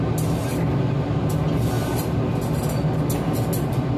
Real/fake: real